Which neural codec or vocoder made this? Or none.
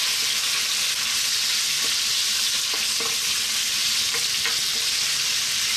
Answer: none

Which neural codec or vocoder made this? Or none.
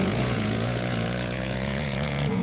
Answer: vocoder, Vocos